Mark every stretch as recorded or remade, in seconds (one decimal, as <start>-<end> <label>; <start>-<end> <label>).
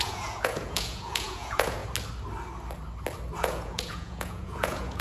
0.0-1.8 remade; 1.8-3.4 recorded; 3.4-5.0 remade